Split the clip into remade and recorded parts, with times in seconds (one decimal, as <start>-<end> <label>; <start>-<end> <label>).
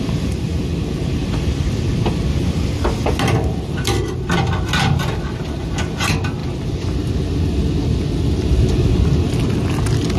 0.0-10.2 recorded